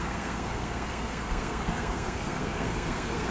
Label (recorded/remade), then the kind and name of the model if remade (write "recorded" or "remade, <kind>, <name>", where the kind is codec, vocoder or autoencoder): remade, codec, SNAC